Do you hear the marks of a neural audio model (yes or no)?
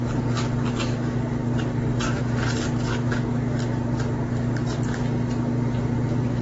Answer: no